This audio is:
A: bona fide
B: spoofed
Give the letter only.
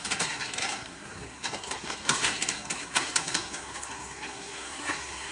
B